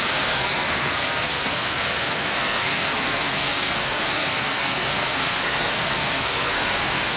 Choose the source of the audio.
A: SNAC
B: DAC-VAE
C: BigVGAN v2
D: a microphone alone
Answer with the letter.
A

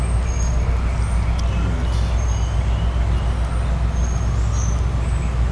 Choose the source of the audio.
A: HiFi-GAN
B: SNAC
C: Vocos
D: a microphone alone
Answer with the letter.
D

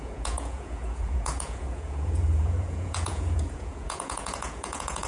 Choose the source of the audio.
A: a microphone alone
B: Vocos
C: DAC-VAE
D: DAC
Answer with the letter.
B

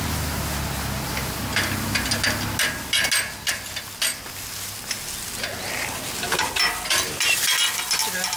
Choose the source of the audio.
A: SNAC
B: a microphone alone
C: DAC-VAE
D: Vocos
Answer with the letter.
B